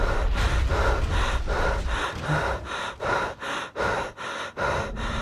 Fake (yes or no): no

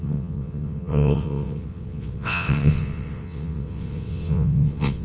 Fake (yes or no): yes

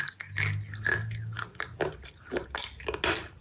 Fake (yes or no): no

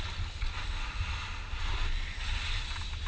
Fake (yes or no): no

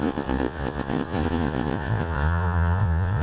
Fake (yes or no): yes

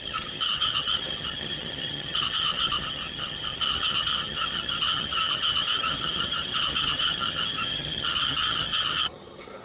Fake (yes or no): yes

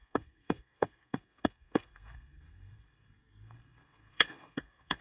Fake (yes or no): yes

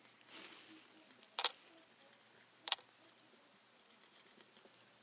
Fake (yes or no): no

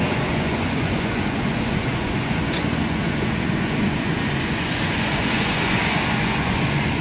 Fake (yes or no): yes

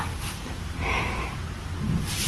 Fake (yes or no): no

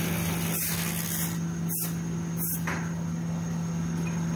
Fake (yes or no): no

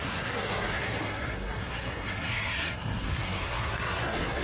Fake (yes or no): yes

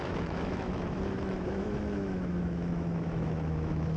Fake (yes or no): yes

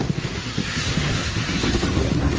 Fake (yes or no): yes